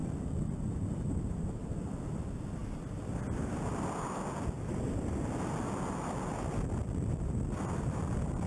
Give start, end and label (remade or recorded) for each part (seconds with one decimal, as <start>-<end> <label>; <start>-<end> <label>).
0.0-2.6 recorded; 2.6-3.5 remade; 3.5-8.5 recorded